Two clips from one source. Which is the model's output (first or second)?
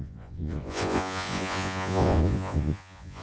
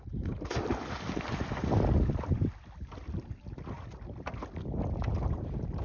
first